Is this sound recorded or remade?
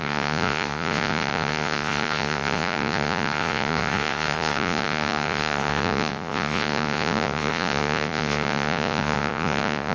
remade